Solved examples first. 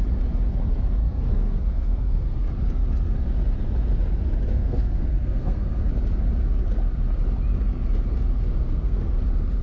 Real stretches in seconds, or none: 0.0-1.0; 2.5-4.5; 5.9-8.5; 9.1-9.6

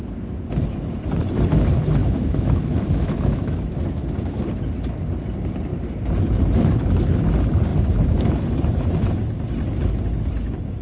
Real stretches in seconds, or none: 0.0-2.0; 3.7-10.8